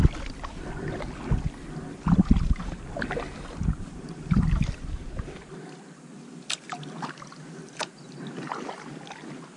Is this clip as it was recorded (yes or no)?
yes